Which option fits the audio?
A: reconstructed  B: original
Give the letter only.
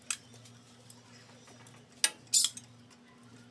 B